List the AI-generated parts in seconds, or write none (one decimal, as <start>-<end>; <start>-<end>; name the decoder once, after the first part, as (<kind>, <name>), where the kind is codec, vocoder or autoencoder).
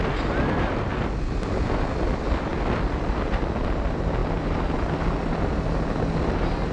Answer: none